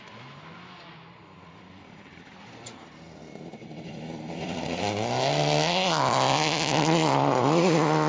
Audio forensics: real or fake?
real